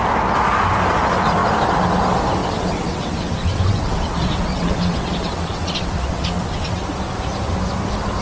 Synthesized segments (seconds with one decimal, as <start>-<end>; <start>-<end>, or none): 2.4-6.8